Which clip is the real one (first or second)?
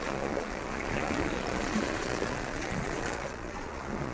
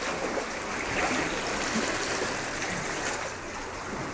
second